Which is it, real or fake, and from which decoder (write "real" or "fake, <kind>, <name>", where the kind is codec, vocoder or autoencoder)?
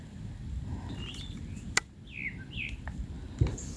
real